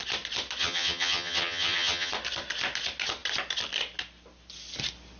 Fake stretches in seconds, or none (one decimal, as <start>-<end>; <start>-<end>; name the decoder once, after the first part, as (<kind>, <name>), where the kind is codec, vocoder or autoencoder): 0.6-2.1 (vocoder, HiFi-GAN)